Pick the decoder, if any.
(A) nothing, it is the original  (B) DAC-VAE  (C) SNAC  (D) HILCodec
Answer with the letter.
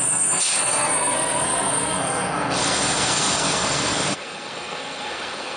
C